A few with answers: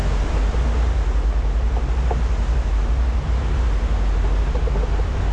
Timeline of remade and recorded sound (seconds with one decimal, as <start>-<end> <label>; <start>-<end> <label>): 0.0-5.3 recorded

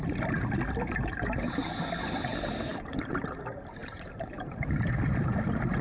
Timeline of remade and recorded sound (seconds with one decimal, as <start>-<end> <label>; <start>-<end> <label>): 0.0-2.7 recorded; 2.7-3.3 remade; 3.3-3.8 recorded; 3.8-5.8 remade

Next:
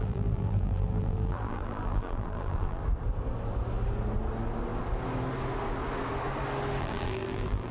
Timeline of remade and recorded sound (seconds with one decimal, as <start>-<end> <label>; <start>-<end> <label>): 0.0-2.8 remade; 2.8-6.8 recorded; 6.8-7.7 remade

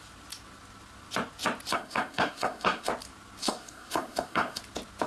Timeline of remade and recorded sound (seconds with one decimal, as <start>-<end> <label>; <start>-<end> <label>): 0.0-1.7 recorded; 1.7-2.9 remade; 2.9-3.4 recorded; 3.4-4.6 remade; 4.6-5.1 recorded

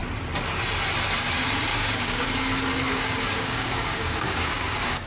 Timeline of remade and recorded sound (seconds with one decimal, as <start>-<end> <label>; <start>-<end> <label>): 0.0-1.7 recorded; 1.7-5.1 remade

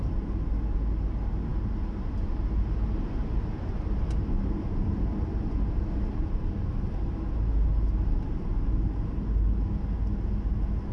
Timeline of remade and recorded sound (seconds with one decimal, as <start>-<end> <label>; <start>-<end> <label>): 0.0-10.9 recorded

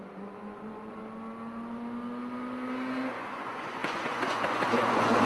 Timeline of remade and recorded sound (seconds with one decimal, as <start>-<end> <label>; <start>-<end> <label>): 0.0-1.0 remade; 1.0-3.1 recorded; 3.1-5.3 remade